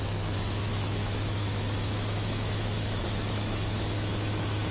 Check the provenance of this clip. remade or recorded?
remade